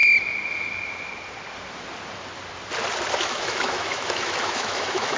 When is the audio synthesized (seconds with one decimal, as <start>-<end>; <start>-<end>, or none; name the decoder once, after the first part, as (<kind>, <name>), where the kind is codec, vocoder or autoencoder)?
3.1-5.2 (autoencoder, DAC-VAE)